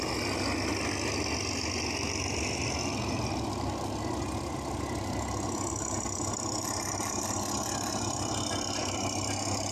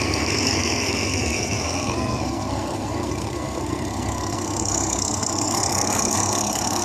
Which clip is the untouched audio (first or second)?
first